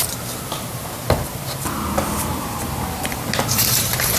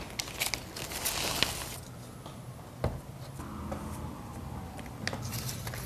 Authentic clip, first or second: second